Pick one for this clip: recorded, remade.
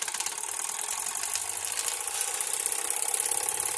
recorded